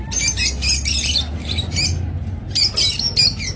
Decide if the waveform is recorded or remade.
recorded